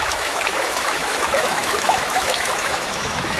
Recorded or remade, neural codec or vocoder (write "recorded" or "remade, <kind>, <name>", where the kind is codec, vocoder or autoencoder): remade, autoencoder, DAC-VAE